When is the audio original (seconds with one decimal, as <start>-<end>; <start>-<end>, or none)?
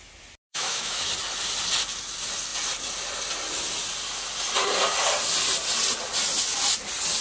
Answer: 0.0-0.5; 1.1-7.2